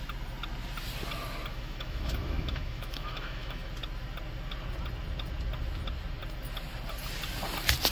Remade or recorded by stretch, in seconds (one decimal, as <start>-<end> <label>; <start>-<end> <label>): 0.0-1.5 recorded; 1.5-3.7 remade; 3.7-7.9 recorded